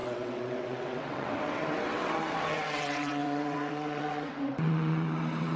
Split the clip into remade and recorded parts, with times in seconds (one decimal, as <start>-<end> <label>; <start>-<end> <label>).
0.0-5.6 remade